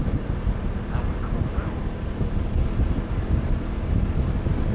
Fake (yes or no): no